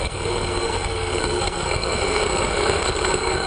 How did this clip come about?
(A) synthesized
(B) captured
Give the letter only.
A